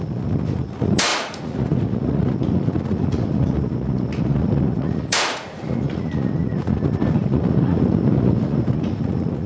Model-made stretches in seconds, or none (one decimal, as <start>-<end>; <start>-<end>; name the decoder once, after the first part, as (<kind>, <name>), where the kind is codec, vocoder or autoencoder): 0.0-9.5 (vocoder, Vocos)

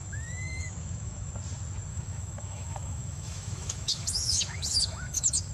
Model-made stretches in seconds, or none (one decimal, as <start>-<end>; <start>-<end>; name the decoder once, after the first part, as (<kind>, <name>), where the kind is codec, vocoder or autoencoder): 0.0-1.3 (autoencoder, DAC-VAE); 1.9-5.5

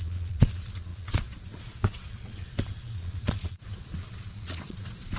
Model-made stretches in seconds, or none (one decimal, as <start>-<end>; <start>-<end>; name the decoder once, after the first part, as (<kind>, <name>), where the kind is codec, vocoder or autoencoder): 0.0-5.2 (vocoder, Vocos)

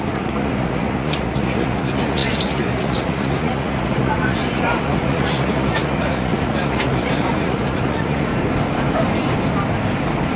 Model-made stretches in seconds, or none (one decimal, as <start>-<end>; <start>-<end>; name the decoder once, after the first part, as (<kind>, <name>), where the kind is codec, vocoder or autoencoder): 0.0-8.3 (vocoder, Vocos)

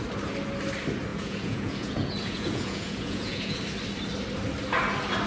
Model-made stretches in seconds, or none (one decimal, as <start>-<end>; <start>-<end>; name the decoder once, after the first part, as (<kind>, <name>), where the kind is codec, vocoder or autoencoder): 1.1-3.6 (vocoder, Vocos)

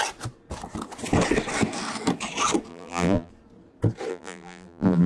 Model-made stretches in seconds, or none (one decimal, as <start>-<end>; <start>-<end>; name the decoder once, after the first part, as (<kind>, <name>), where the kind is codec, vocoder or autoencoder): 2.7-3.3 (vocoder, BigVGAN v2); 4.1-5.1

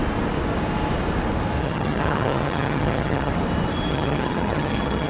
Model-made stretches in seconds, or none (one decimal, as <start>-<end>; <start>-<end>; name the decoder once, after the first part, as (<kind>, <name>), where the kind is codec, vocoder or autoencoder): 1.6-3.3 (vocoder, HiFi-GAN); 3.9-5.1

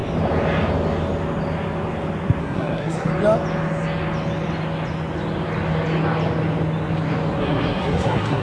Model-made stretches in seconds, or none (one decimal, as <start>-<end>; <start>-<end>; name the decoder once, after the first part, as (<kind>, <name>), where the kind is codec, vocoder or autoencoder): 2.4-3.1 (codec, SNAC); 7.4-8.4